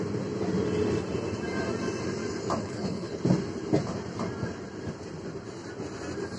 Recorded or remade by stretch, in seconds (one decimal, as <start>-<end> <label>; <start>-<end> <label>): 0.0-2.6 recorded; 2.6-3.2 remade; 3.2-6.4 recorded